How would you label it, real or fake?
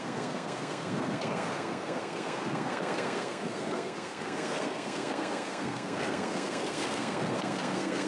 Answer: fake